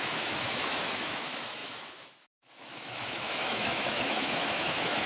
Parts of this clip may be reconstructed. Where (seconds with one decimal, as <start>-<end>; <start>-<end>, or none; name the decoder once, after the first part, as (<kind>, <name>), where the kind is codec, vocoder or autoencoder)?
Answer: 0.0-5.1 (autoencoder, DAC-VAE)